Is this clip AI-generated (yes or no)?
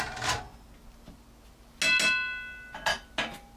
no